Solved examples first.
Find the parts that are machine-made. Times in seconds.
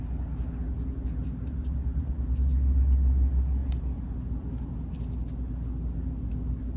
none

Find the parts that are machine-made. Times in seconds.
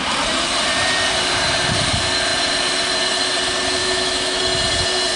3.8-4.4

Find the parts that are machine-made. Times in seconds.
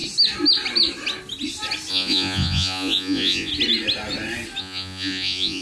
1.9-3.5; 4.6-5.6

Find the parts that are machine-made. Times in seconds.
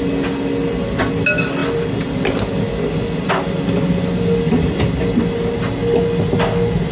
none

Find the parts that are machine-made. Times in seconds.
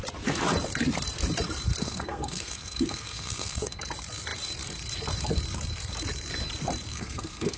1.8-3.8; 6.9-7.6